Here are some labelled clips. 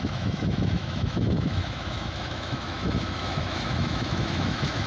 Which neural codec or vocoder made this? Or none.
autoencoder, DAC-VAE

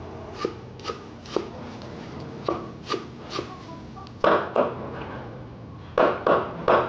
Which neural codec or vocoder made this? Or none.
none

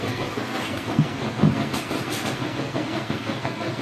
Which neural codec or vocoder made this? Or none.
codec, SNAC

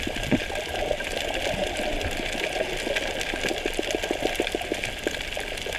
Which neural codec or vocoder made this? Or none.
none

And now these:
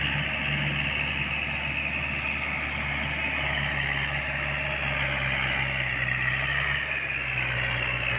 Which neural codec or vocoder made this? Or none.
none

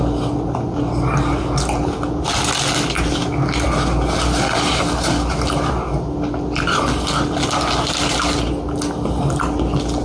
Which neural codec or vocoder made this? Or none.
none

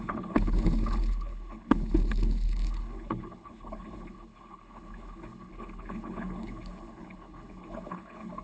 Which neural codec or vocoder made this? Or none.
codec, HILCodec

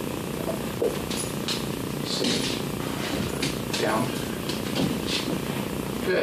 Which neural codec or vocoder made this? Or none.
none